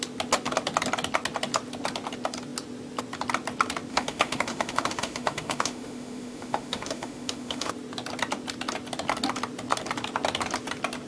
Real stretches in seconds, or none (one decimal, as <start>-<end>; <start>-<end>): 0.0-3.9; 7.7-11.1